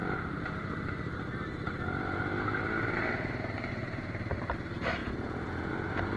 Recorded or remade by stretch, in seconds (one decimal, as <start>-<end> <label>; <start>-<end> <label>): 0.0-5.0 recorded; 5.0-5.7 remade; 5.7-6.2 recorded